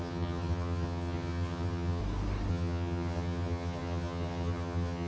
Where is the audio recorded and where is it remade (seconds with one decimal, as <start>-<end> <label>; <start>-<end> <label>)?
0.0-2.0 remade; 2.0-2.5 recorded; 2.5-5.1 remade